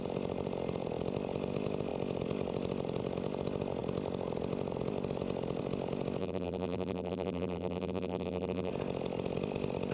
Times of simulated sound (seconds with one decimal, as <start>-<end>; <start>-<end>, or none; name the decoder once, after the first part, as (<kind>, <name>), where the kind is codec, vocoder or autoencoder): 6.2-8.7 (vocoder, BigVGAN v2)